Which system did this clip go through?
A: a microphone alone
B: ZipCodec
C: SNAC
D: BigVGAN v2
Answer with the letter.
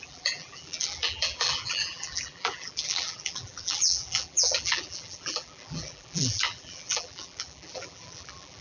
D